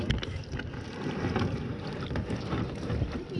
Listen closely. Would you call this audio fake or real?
real